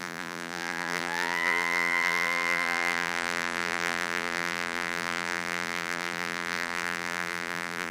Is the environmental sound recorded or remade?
remade